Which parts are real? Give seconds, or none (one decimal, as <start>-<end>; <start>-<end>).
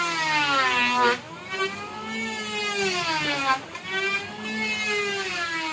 0.0-5.7